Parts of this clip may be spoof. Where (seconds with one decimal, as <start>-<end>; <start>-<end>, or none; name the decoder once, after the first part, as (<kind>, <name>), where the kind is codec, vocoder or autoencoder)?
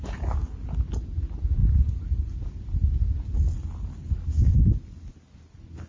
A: none